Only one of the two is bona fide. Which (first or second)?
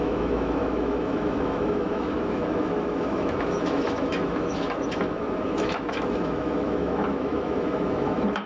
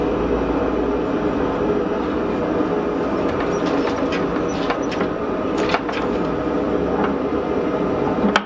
second